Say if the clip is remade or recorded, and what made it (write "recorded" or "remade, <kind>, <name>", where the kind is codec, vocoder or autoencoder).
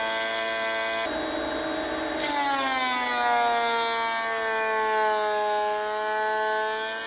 recorded